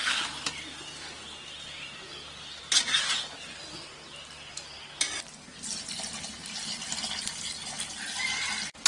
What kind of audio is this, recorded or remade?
recorded